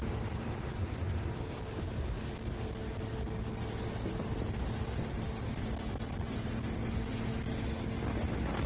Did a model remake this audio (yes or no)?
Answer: no